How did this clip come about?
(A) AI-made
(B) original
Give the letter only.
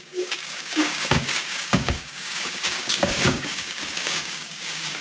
A